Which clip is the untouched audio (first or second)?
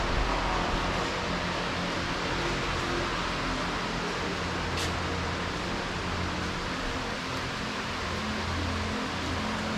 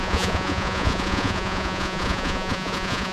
first